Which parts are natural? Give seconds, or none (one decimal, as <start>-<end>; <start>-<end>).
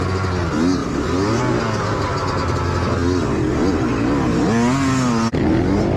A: 0.0-6.0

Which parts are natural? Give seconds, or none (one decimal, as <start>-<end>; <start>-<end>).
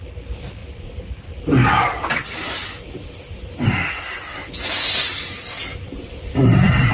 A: 0.0-0.6; 4.7-5.7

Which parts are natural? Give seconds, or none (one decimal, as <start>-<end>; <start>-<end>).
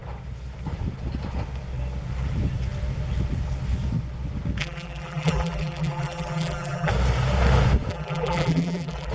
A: 0.0-4.6; 6.9-7.9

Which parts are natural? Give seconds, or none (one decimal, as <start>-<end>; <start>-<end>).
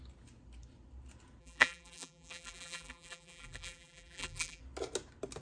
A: 0.0-1.4; 4.6-5.4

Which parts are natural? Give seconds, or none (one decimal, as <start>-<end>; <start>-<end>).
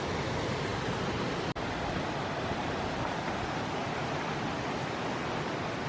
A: 0.0-5.9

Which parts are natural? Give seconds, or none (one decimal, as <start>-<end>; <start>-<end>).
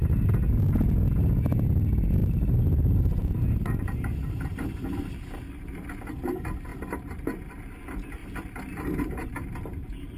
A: 0.0-2.2; 6.0-6.7; 7.8-8.2; 9.3-10.2